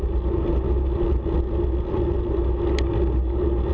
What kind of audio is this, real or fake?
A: real